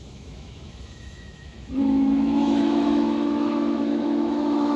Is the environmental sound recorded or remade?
remade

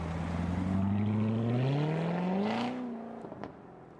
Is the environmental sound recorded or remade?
recorded